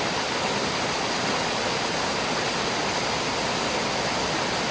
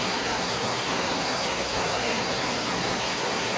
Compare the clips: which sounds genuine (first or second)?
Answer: first